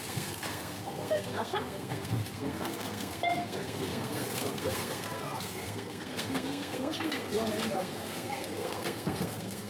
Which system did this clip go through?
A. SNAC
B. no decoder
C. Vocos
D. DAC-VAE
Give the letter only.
A